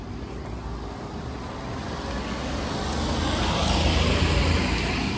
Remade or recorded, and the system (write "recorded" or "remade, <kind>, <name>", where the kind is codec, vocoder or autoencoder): recorded